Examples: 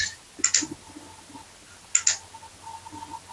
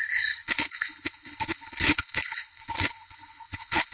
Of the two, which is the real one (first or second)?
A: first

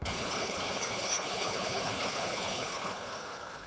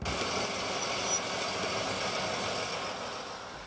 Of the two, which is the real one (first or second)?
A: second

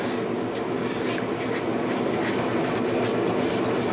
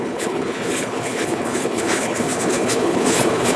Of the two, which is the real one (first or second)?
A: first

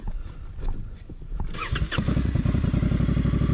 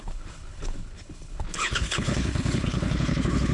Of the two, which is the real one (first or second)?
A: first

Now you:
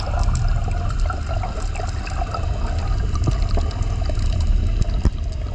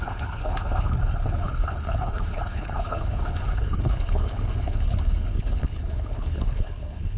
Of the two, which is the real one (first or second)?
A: first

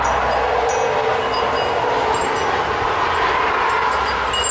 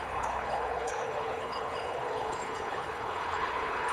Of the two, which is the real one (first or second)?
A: first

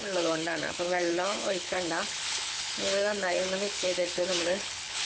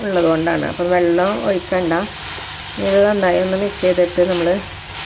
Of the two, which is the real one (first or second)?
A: second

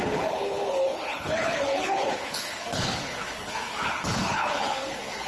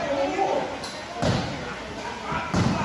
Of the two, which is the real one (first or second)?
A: second